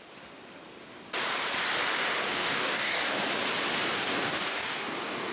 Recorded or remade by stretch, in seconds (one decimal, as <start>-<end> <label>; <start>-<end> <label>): 0.0-2.3 recorded; 2.3-3.0 remade; 3.0-3.9 recorded; 3.9-5.3 remade